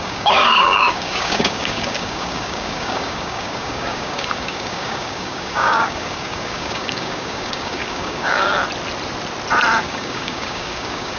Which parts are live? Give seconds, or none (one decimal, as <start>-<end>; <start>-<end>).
8.5-9.8